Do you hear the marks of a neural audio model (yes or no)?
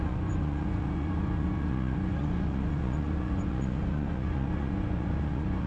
yes